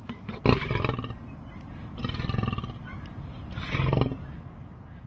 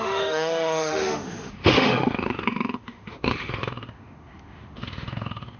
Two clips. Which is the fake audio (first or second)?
second